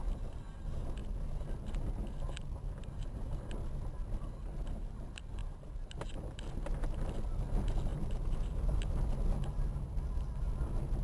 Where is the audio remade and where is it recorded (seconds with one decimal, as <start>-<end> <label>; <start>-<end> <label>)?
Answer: 0.0-5.4 recorded; 5.4-6.0 remade; 6.0-7.9 recorded; 7.9-9.0 remade; 9.0-11.0 recorded